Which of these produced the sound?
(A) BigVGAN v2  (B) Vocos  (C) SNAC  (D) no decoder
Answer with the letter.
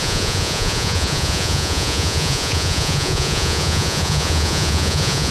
B